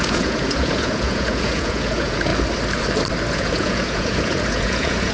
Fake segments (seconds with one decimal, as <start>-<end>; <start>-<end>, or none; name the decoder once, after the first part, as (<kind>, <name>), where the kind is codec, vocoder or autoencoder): 0.0-2.3 (vocoder, Vocos); 3.3-5.1